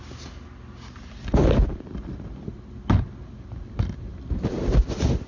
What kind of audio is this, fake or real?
real